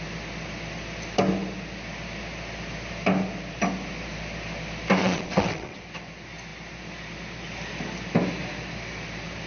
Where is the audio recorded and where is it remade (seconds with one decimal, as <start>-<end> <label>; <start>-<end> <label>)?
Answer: 0.0-5.0 recorded; 5.0-5.8 remade; 5.8-9.5 recorded